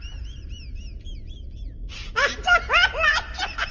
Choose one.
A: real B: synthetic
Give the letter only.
A